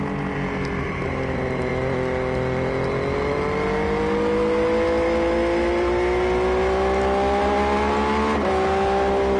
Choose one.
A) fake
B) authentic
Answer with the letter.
B